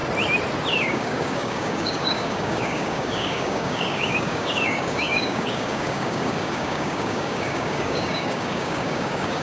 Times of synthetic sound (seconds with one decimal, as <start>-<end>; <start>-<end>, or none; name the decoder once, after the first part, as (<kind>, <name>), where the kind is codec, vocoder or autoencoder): 0.7-9.4 (codec, DAC)